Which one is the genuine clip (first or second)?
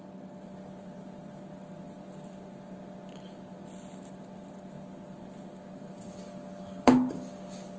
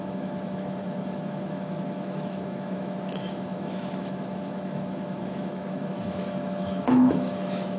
first